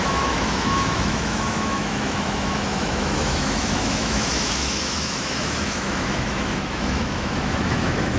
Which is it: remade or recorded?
remade